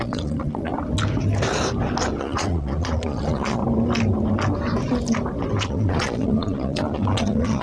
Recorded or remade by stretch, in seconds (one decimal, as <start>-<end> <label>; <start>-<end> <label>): 0.0-0.7 remade; 0.7-2.2 recorded; 2.2-3.6 remade; 3.6-5.6 recorded; 5.6-7.6 remade